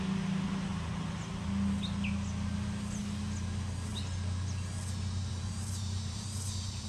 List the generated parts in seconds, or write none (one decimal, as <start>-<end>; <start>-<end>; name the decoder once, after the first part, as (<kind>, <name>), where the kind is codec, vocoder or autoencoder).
5.3-6.9 (vocoder, BigVGAN v2)